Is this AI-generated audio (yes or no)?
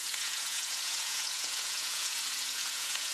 yes